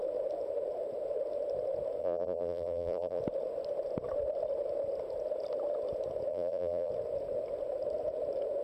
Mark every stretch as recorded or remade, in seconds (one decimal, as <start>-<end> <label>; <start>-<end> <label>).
0.0-2.0 recorded; 2.0-3.2 remade; 3.2-6.3 recorded; 6.3-6.9 remade; 6.9-8.6 recorded